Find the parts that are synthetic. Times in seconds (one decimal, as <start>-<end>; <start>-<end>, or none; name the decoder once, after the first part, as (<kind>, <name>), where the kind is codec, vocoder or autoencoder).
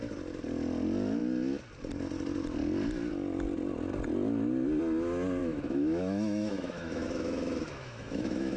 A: 5.4-8.6 (autoencoder, DAC-VAE)